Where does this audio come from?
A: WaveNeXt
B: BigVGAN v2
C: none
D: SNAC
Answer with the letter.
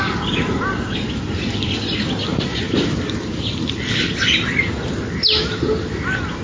C